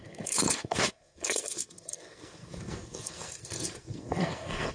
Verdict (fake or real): fake